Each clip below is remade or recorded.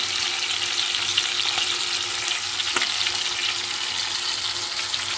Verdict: recorded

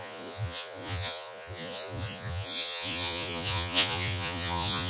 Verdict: remade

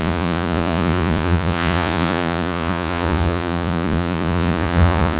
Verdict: remade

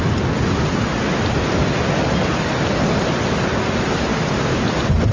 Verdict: recorded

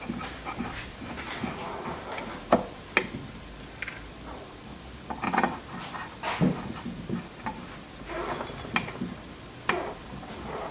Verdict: recorded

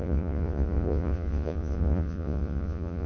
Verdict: remade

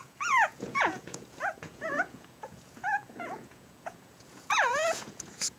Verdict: remade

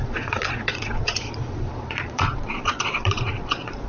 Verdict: remade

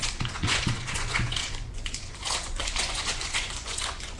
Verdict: remade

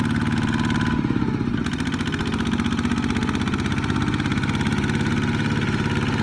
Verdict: recorded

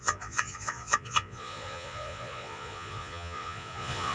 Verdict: remade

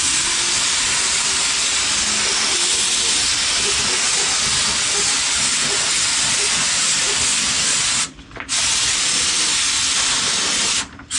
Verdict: recorded